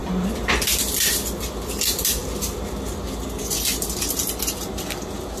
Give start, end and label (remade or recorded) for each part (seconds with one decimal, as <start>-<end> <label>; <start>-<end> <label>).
0.0-5.4 recorded